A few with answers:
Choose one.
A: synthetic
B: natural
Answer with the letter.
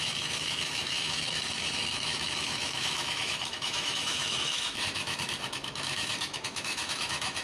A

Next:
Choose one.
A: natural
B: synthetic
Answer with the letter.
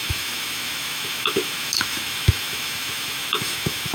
B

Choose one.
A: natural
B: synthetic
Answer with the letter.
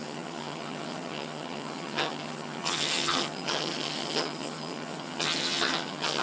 B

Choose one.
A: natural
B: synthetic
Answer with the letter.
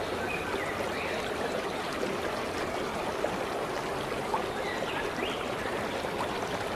A